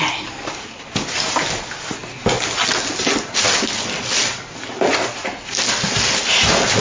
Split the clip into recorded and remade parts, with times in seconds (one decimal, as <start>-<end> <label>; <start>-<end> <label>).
0.0-6.8 recorded